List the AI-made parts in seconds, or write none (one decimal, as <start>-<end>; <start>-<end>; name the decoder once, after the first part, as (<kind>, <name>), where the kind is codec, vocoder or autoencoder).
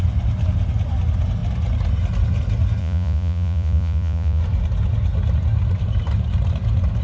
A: 2.8-4.4 (vocoder, Vocos)